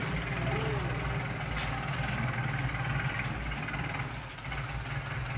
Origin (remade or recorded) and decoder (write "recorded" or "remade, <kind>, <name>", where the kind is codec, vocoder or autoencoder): recorded